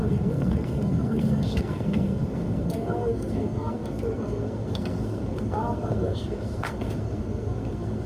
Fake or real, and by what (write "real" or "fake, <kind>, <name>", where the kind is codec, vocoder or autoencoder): fake, codec, SNAC